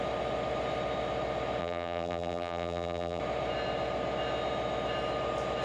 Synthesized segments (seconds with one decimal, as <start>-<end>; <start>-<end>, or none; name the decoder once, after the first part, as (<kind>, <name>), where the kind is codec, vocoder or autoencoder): 1.6-3.2 (vocoder, BigVGAN v2)